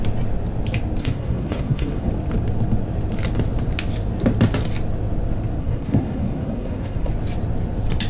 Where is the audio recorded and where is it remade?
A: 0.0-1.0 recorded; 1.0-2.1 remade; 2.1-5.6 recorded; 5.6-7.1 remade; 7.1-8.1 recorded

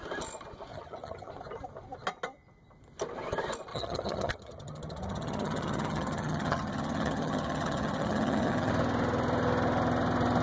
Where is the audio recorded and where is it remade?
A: 0.0-0.7 recorded; 0.7-1.3 remade; 1.3-3.7 recorded; 3.7-8.7 remade; 8.7-10.4 recorded